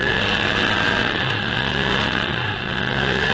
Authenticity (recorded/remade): remade